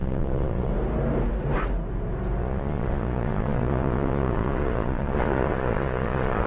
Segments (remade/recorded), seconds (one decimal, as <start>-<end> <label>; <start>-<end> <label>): 0.0-0.7 remade; 0.7-2.4 recorded; 2.4-6.5 remade